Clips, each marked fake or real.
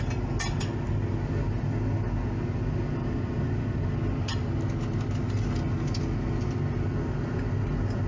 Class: real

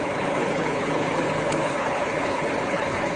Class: fake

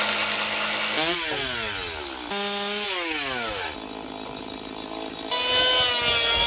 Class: real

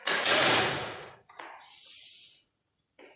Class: fake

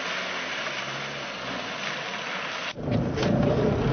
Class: fake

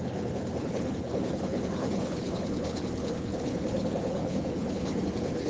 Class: fake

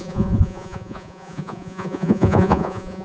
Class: fake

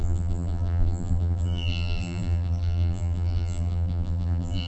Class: fake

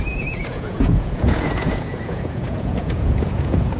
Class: fake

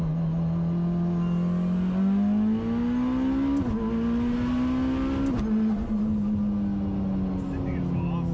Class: real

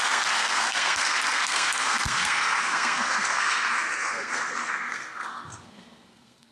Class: fake